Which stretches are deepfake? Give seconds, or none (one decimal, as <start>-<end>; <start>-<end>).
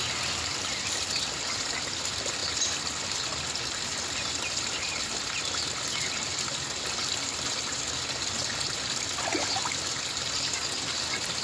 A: none